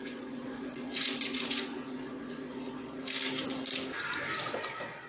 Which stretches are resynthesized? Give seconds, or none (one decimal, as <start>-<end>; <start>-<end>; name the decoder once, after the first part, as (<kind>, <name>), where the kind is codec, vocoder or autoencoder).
0.0-3.0 (vocoder, Vocos); 4.5-5.1